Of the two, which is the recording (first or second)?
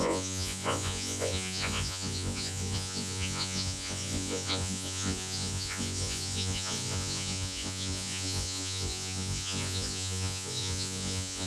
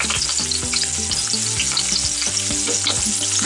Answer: second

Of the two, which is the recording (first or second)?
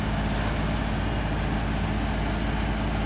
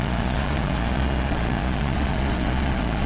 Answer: first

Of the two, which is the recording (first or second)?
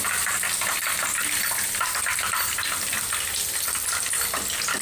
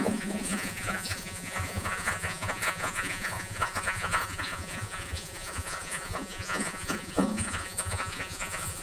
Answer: first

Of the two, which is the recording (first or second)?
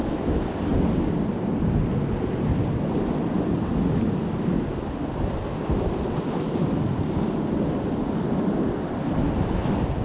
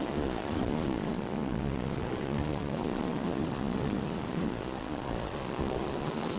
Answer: first